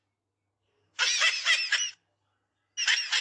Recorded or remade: recorded